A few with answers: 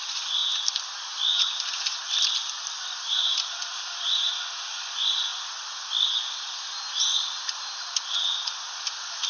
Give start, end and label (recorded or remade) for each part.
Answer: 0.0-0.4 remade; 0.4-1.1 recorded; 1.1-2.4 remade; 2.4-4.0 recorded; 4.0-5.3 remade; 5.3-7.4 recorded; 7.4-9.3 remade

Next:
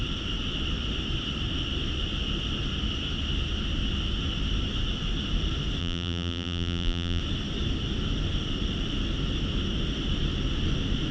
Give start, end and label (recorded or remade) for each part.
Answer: 0.0-5.8 recorded; 5.8-7.2 remade; 7.2-11.1 recorded

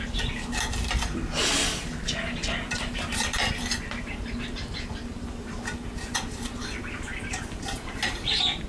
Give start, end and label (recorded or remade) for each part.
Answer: 0.0-8.7 recorded

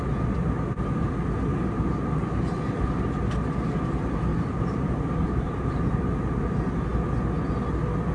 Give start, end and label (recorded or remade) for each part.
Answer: 0.0-4.3 recorded; 4.3-6.0 remade; 6.0-8.1 recorded

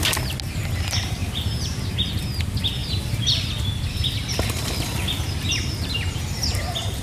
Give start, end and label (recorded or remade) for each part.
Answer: 0.0-1.2 recorded; 1.2-1.8 remade; 1.8-2.8 recorded; 2.8-3.4 remade; 3.4-5.4 recorded; 5.4-7.0 remade

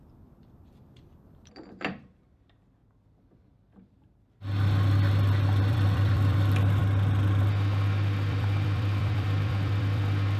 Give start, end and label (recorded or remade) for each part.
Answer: 0.0-2.8 remade; 2.8-5.7 recorded; 5.7-6.8 remade; 6.8-7.5 recorded; 7.5-10.4 remade

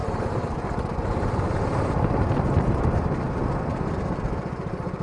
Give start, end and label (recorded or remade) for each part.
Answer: 0.0-3.4 remade; 3.4-4.0 recorded; 4.0-5.0 remade